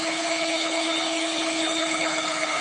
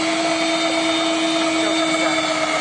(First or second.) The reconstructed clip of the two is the first